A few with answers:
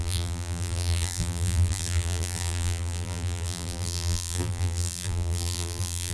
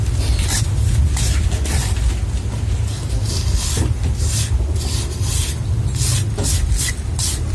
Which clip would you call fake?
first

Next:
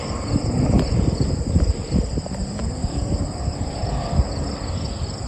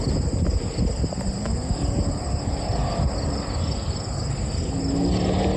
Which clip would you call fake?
first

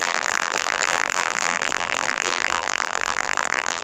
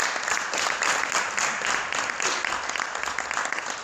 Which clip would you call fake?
first